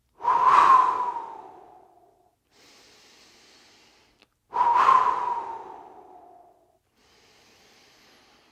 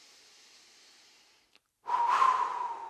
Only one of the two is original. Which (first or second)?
first